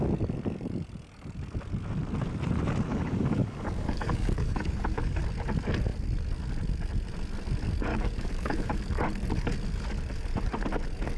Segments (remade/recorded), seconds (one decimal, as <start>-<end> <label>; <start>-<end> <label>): 0.0-2.9 recorded; 2.9-5.2 remade; 5.2-7.9 recorded; 7.9-8.8 remade; 8.8-11.2 recorded